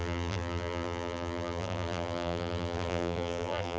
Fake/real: fake